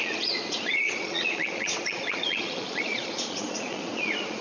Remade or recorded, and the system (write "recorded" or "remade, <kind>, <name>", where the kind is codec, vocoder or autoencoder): remade, vocoder, Vocos